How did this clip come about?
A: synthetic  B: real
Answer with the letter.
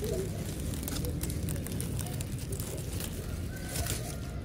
B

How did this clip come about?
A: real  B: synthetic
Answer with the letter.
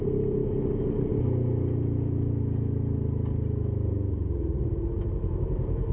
A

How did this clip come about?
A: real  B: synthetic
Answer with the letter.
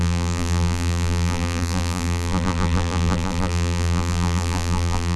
B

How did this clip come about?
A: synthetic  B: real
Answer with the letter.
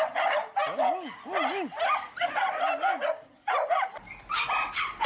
B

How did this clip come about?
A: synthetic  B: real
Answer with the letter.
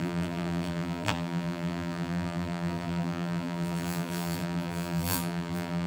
A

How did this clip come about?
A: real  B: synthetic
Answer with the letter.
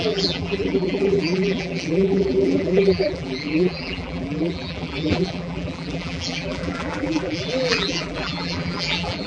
B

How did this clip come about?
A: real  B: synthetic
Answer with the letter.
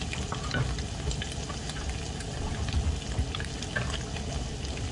A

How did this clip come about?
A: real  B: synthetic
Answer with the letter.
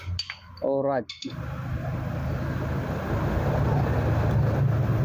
A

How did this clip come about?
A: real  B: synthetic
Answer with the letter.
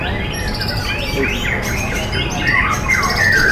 A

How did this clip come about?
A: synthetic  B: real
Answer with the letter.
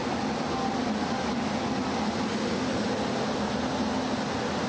B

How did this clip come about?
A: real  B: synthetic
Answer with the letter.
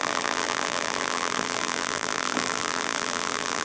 B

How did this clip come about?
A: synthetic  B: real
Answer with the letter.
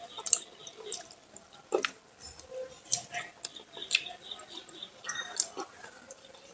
B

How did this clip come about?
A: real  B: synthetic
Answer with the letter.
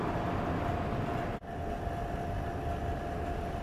A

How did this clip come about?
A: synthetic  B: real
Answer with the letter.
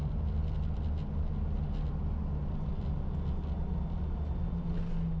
B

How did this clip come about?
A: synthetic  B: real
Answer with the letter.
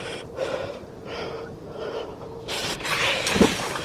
A